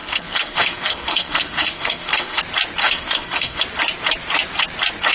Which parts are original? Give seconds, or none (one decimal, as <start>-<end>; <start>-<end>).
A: 2.4-2.8; 3.6-5.1